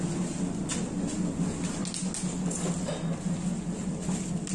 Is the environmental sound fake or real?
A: real